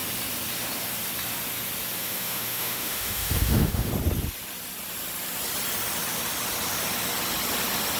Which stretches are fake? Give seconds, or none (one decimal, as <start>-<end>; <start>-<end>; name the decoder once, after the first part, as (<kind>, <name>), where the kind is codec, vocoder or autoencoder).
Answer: 2.0-3.9 (autoencoder, DAC-VAE)